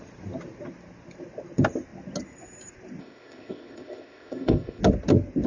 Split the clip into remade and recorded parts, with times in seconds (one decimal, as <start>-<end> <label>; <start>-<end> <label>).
0.0-3.0 recorded; 3.0-4.8 remade; 4.8-5.5 recorded